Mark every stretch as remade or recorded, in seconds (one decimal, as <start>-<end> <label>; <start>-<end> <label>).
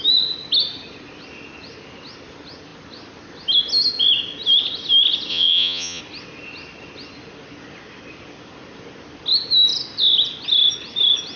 0.0-5.3 recorded; 5.3-6.0 remade; 6.0-11.4 recorded